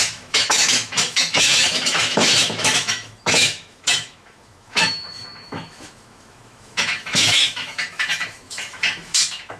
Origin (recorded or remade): remade